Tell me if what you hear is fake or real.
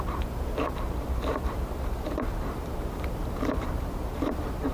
fake